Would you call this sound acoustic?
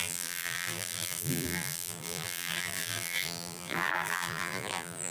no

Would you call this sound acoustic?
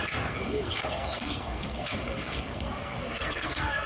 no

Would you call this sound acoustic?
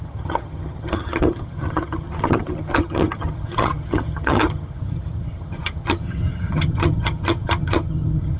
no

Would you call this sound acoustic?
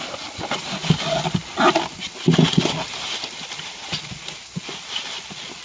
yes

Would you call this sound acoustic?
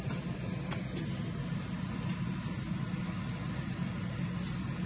yes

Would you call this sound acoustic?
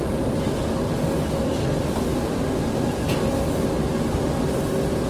yes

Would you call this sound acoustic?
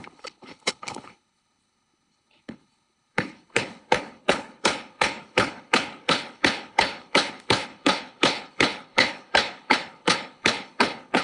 no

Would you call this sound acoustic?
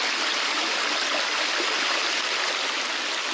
yes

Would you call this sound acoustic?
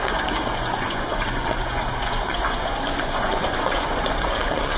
no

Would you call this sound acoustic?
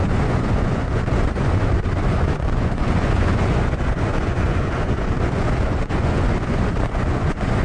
no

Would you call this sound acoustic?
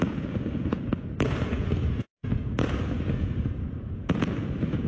no